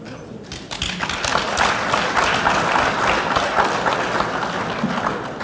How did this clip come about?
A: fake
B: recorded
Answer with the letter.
B